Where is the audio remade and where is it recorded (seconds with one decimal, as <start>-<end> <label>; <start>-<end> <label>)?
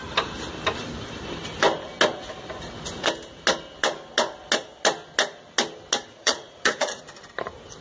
0.0-6.1 recorded; 6.1-7.0 remade; 7.0-7.8 recorded